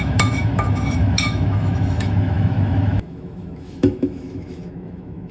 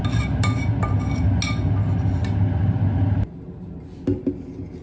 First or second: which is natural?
second